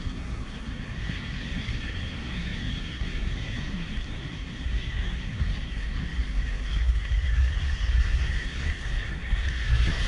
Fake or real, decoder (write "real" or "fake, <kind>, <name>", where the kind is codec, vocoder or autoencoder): fake, codec, SNAC